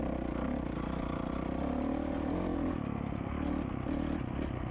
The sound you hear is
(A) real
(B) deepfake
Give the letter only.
A